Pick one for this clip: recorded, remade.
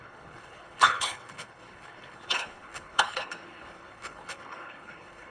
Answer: remade